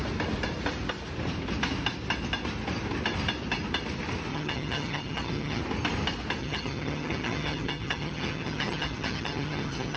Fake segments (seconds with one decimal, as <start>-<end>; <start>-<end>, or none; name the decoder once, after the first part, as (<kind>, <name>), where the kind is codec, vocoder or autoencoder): 4.3-5.6 (vocoder, HiFi-GAN); 6.4-10.0